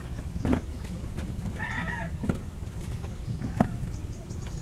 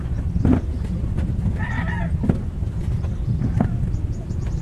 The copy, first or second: first